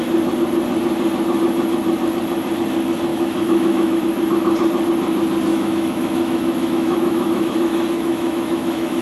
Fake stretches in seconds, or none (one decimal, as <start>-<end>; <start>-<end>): 3.1-4.0; 5.5-9.0